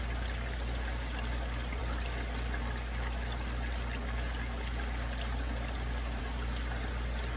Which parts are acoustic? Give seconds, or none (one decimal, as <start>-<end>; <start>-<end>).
0.0-7.4